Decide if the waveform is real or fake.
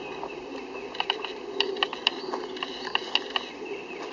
real